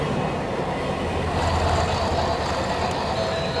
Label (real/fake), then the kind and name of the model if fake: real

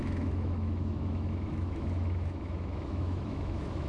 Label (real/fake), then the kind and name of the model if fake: fake, autoencoder, DAC-VAE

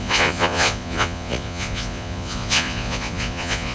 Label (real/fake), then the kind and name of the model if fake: fake, vocoder, Vocos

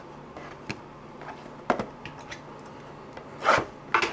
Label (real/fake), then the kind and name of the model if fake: real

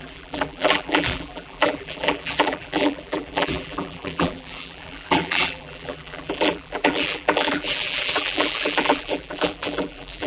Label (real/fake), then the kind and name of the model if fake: fake, vocoder, BigVGAN v2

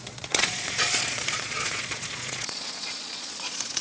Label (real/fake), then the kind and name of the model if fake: fake, vocoder, Vocos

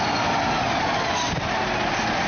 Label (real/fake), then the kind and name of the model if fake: real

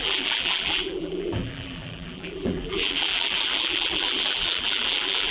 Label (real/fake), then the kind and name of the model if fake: fake, vocoder, BigVGAN v2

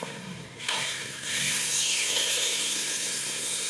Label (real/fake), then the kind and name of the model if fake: fake, codec, SNAC